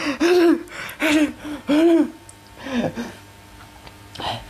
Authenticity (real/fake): real